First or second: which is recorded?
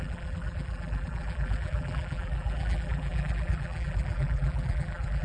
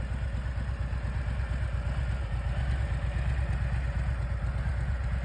second